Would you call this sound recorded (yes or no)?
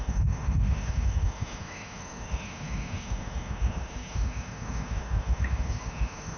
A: no